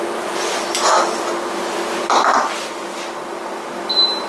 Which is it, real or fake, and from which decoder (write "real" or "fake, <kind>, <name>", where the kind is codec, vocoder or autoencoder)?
real